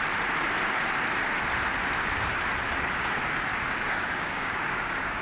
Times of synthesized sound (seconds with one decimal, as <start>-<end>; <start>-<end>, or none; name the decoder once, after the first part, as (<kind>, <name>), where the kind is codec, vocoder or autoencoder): 3.5-5.2 (codec, DAC)